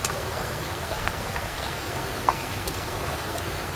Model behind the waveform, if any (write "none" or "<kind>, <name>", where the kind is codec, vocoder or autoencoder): codec, SNAC